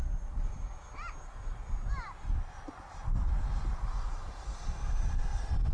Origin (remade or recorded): recorded